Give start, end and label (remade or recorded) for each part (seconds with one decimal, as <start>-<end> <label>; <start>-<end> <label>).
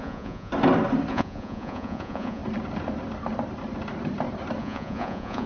0.0-0.5 remade; 0.5-1.1 recorded; 1.1-2.4 remade; 2.4-4.6 recorded; 4.6-5.5 remade